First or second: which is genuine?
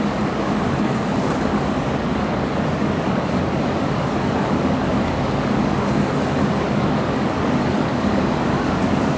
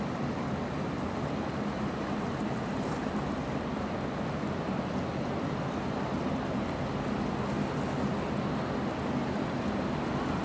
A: second